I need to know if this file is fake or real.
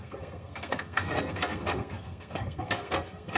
fake